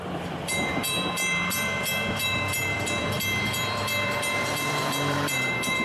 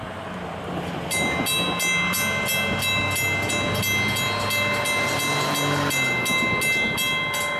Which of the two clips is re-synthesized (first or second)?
first